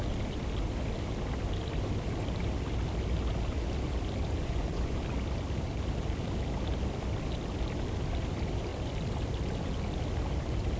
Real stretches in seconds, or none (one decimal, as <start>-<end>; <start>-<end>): 0.0-4.4; 5.0-10.8